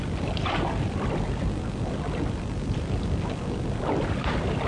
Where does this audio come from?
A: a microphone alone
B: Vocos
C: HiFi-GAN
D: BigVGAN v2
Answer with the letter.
A